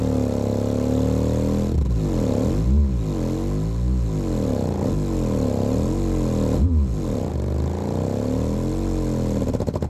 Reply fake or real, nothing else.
real